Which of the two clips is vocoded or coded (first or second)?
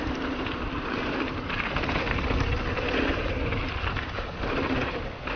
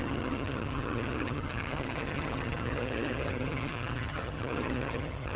second